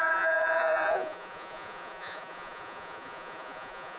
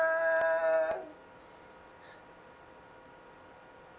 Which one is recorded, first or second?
second